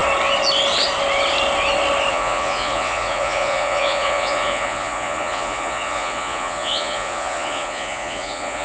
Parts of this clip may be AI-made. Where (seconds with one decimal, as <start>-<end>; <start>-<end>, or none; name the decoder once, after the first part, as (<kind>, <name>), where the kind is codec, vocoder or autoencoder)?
2.1-8.6 (vocoder, Vocos)